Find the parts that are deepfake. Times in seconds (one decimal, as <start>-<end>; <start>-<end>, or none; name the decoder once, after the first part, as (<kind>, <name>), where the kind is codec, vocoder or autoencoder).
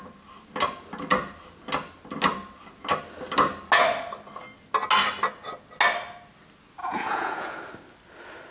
6.8-7.6 (vocoder, Vocos)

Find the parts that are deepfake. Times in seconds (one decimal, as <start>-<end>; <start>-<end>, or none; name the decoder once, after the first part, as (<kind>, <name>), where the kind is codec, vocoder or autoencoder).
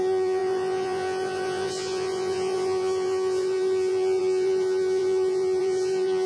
0.0-6.3 (vocoder, Vocos)